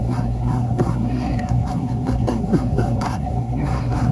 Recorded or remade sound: remade